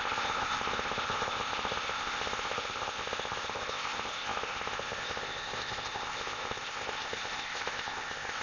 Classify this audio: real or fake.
fake